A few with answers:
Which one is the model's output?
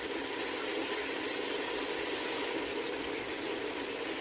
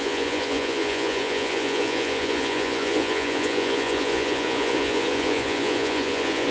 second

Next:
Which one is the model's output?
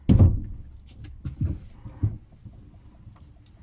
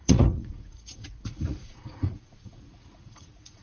second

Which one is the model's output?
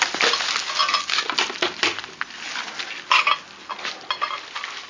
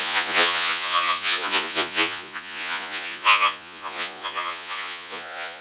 second